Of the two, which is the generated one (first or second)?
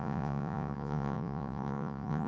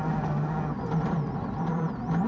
first